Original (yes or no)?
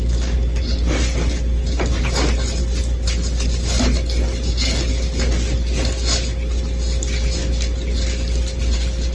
yes